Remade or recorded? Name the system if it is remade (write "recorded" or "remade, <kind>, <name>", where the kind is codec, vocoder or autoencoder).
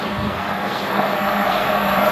remade, codec, SNAC